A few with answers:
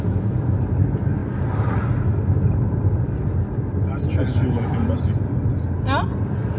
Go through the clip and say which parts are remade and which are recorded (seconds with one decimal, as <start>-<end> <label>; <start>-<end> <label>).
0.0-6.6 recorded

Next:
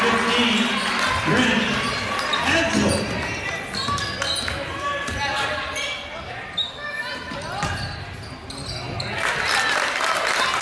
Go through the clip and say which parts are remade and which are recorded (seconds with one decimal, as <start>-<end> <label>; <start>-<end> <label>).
0.0-10.6 recorded

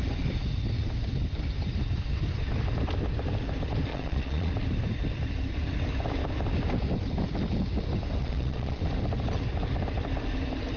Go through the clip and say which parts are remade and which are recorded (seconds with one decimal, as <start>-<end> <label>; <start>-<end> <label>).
0.0-3.9 recorded; 3.9-4.5 remade; 4.5-8.2 recorded; 8.2-8.8 remade; 8.8-10.8 recorded

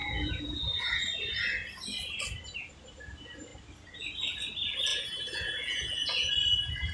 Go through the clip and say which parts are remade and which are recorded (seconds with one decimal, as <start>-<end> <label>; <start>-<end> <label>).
0.0-1.1 remade; 1.1-4.9 recorded; 4.9-6.3 remade; 6.3-6.9 recorded

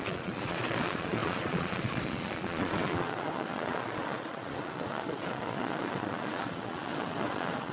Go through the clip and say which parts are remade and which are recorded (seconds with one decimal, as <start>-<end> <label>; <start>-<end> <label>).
0.0-7.7 remade

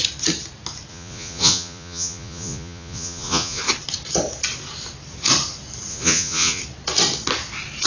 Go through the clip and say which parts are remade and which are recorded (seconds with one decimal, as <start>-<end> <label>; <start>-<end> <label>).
0.0-0.9 recorded; 0.9-3.6 remade; 3.6-5.9 recorded; 5.9-6.6 remade; 6.6-7.9 recorded